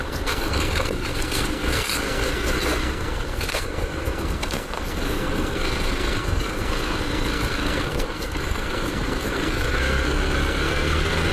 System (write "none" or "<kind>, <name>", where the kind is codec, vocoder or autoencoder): codec, SNAC